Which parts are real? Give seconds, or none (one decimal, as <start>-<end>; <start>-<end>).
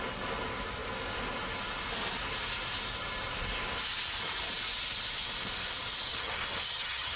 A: 0.0-6.1